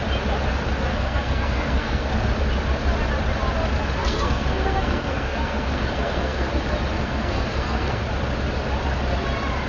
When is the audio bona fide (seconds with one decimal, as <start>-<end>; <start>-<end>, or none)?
0.0-0.9; 2.1-4.0; 6.5-7.0; 8.0-9.7